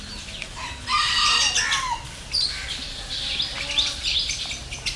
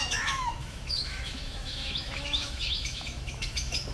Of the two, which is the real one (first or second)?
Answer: first